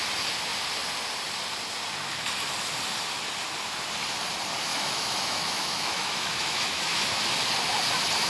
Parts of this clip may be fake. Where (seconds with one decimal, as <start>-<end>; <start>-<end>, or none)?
4.7-7.2